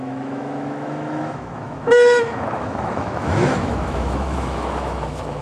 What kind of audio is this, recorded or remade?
remade